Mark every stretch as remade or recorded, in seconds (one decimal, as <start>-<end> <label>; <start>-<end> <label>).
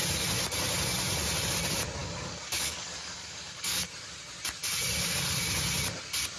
0.0-2.0 recorded; 2.0-3.8 remade; 3.8-6.4 recorded